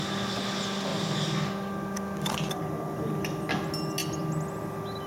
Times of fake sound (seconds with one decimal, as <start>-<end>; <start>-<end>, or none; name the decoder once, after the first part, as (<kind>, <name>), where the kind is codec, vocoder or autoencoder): none